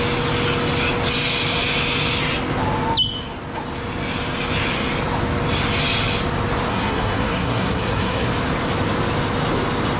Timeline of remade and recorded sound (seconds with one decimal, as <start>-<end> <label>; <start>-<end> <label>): 0.0-6.7 recorded; 6.7-8.3 remade; 8.3-10.0 recorded